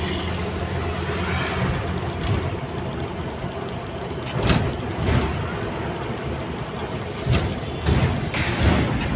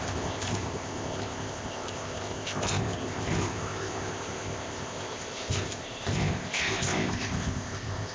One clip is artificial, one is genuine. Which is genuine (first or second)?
first